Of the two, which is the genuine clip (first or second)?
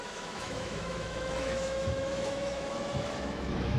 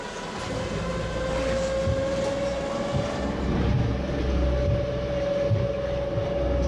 second